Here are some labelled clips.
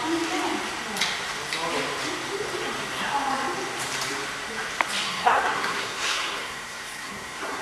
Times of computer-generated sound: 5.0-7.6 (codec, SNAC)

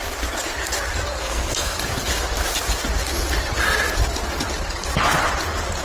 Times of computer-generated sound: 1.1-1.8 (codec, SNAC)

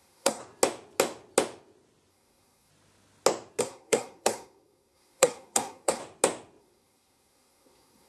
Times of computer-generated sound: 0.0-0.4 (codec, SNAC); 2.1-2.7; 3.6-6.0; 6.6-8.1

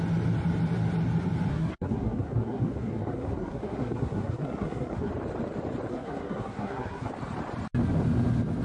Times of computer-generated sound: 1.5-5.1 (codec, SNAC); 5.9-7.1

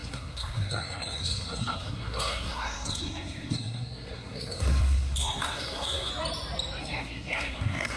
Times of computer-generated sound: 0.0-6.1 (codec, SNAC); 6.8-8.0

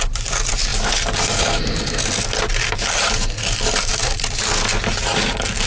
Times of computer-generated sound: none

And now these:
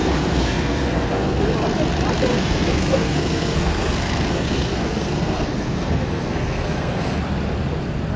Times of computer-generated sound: 0.0-1.4 (codec, SNAC); 2.3-7.2

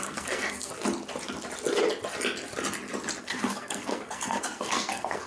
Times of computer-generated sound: 0.0-0.7 (codec, SNAC); 3.2-5.3